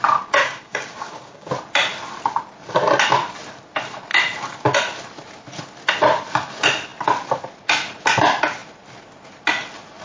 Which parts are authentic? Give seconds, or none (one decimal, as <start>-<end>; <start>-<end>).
0.0-0.4; 1.5-10.0